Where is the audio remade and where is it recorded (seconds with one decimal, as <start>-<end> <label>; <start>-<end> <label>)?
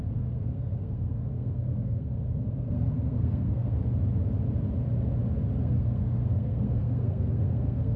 0.0-3.8 remade; 3.8-5.6 recorded; 5.6-8.0 remade